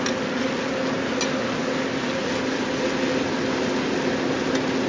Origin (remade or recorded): recorded